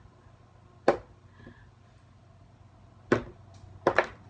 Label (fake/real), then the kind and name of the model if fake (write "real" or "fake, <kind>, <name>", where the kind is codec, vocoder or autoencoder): real